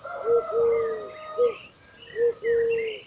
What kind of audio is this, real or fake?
real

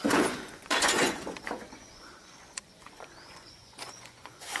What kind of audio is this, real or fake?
fake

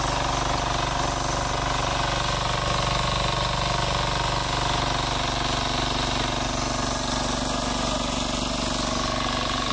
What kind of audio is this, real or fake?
real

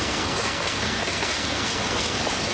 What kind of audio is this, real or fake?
fake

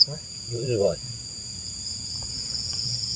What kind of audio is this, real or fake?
fake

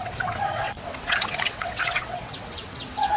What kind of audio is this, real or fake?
fake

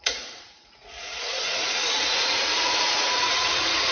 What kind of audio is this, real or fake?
fake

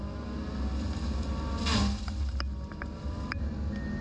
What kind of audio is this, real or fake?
real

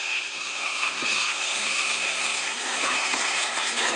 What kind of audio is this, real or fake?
fake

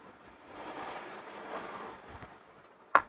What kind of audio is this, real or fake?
fake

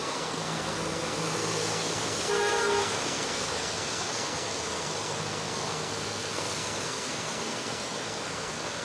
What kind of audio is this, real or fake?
fake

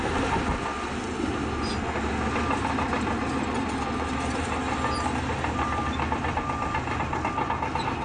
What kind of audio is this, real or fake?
real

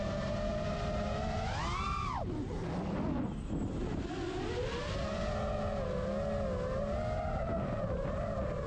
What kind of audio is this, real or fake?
real